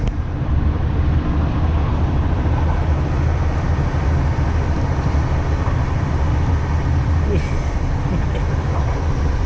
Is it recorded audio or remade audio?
recorded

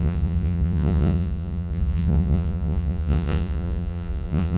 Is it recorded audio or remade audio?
remade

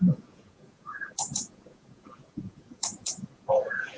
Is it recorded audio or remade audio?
remade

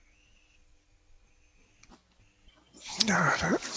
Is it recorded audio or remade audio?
recorded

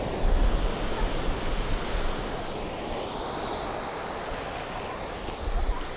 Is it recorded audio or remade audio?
recorded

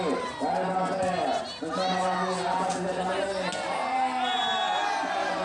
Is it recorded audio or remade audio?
recorded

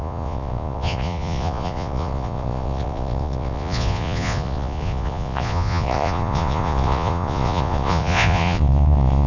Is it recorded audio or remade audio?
remade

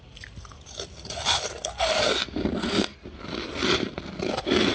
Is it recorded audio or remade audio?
recorded